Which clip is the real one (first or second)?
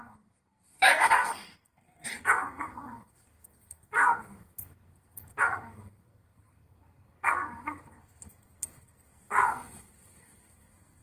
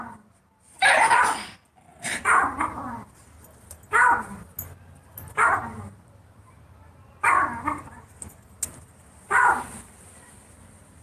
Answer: second